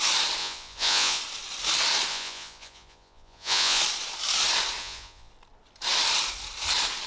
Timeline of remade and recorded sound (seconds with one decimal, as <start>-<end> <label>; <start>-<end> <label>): 0.0-0.4 recorded; 0.4-1.2 remade; 1.2-2.1 recorded; 2.1-3.8 remade; 3.8-4.8 recorded; 4.8-5.3 remade; 5.3-7.1 recorded